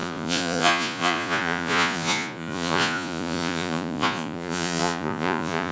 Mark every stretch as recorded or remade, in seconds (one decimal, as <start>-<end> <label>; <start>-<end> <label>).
0.0-5.7 remade